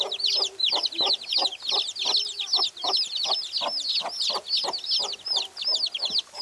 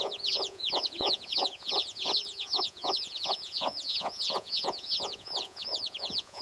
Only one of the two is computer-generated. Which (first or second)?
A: second